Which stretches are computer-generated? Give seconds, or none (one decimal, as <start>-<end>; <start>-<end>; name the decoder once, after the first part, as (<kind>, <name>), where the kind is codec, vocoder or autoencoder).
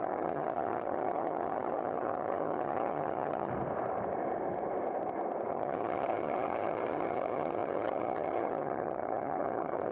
0.0-3.5 (vocoder, HiFi-GAN); 5.5-9.9